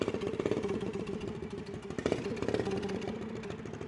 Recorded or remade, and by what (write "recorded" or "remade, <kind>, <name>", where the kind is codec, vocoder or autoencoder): recorded